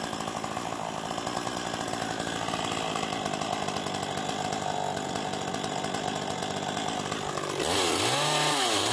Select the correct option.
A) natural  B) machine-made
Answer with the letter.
A